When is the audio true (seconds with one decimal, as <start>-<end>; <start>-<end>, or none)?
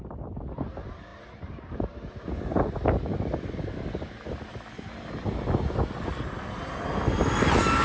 0.0-7.8